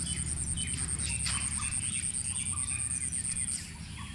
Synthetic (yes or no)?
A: no